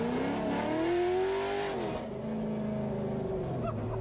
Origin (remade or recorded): recorded